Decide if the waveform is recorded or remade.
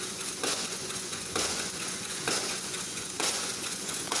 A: remade